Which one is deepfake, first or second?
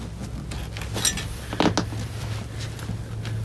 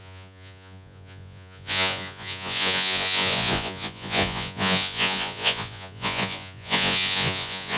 second